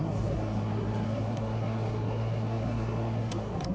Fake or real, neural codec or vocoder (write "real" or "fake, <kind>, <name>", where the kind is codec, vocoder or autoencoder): fake, codec, SNAC